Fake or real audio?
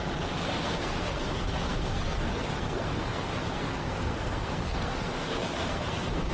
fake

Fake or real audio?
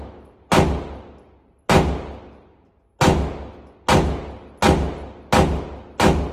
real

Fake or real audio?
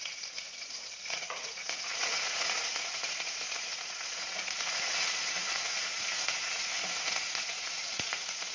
fake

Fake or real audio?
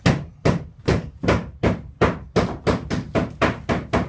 real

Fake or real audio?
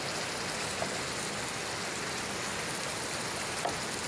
real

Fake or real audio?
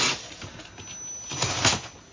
real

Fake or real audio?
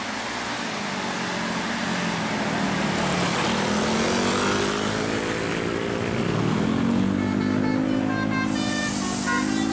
real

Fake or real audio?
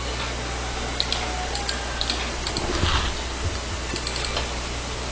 real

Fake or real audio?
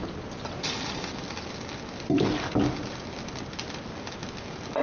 real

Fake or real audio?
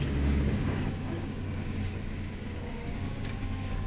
fake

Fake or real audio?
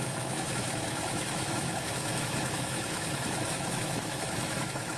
fake